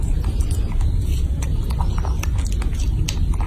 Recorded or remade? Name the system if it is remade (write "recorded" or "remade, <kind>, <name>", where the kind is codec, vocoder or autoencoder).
recorded